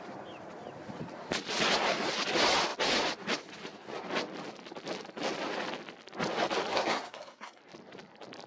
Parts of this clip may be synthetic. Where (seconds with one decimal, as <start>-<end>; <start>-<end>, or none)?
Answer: 6.7-7.6